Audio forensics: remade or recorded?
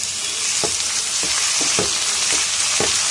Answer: recorded